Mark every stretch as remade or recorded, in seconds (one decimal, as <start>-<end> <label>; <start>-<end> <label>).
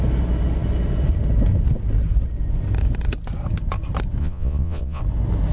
0.0-4.2 recorded; 4.2-5.0 remade; 5.0-5.5 recorded